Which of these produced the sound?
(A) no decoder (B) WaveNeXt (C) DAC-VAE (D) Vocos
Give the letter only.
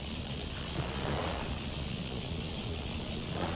D